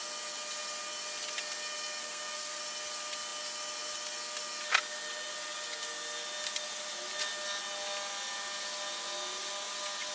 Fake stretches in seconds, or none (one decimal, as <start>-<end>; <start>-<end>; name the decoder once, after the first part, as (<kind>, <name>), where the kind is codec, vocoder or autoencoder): 2.0-2.6 (codec, SNAC)